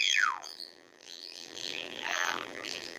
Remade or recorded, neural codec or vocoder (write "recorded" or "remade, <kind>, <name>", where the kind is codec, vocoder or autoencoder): remade, vocoder, BigVGAN v2